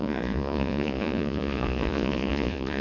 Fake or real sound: fake